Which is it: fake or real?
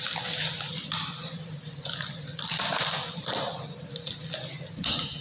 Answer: real